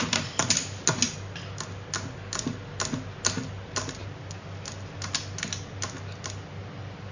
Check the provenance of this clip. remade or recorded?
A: recorded